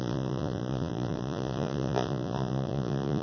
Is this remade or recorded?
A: remade